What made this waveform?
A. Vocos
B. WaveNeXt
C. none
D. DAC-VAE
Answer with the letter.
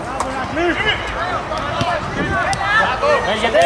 C